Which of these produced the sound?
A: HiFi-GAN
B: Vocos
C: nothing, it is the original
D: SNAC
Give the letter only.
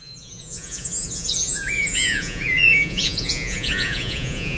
B